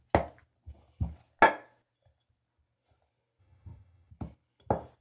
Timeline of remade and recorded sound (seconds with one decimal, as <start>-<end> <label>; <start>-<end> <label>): 0.0-3.4 recorded; 3.4-4.1 remade; 4.1-5.0 recorded